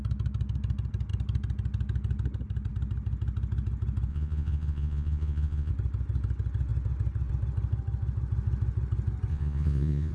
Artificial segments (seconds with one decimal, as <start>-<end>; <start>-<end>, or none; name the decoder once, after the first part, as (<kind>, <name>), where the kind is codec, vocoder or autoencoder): 4.1-5.7 (vocoder, Vocos); 9.3-10.1